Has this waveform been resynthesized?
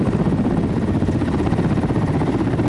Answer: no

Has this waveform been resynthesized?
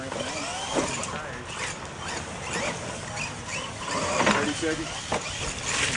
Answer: no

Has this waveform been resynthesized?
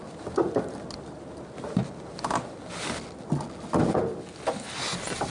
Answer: no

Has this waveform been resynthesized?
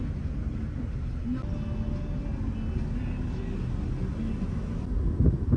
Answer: no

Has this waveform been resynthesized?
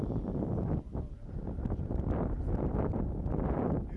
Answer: yes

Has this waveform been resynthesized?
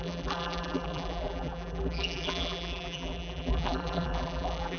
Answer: yes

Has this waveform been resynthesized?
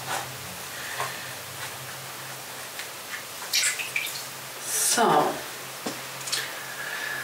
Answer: no